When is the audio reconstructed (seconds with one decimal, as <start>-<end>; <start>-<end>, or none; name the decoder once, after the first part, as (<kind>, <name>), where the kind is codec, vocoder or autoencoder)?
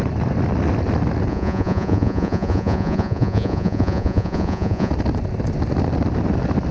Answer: 1.3-4.9 (vocoder, Vocos)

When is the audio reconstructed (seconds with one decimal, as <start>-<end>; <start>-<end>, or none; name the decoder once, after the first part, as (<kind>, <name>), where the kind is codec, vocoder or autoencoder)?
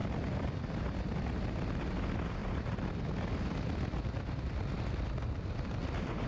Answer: none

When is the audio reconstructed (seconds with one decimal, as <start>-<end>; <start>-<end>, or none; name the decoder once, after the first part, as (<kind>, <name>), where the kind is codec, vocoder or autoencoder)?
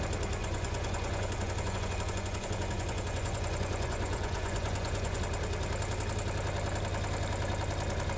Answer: 0.4-5.2 (vocoder, Vocos)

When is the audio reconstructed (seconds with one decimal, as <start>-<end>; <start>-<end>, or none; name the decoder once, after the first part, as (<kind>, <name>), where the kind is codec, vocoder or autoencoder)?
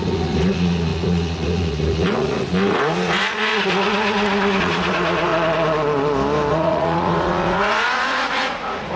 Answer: 0.0-5.3 (vocoder, Vocos); 6.5-9.0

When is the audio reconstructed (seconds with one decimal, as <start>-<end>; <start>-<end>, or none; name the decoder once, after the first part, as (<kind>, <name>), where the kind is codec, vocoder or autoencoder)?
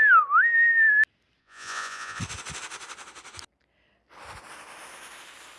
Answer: 1.4-2.2 (vocoder, Vocos)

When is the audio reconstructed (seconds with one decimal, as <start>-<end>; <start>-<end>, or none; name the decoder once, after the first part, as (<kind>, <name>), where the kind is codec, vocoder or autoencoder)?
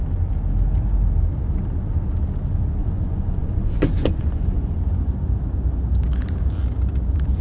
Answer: 2.8-4.8 (vocoder, Vocos)